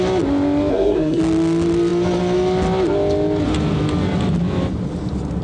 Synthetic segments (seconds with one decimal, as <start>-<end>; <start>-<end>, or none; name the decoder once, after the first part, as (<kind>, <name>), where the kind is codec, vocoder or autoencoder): 0.7-1.2 (codec, SNAC)